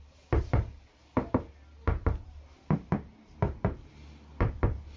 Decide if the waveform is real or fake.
real